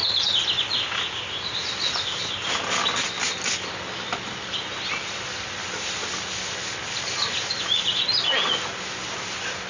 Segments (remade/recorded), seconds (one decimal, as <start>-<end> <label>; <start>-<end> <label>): 0.0-9.7 recorded